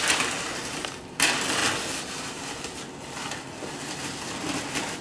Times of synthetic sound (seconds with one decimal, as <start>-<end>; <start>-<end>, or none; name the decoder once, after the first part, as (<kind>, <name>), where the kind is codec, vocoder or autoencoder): none